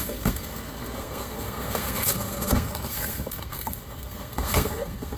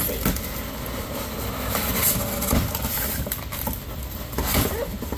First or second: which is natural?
second